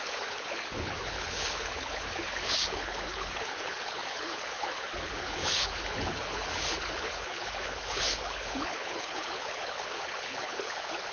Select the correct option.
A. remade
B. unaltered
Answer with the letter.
A